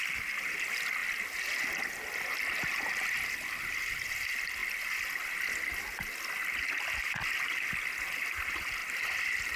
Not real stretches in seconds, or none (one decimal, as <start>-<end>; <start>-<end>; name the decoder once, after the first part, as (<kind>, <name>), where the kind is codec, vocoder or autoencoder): none